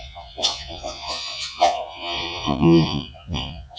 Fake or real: fake